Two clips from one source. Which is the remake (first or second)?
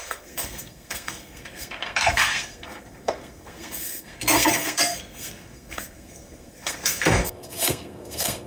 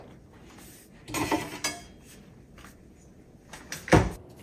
first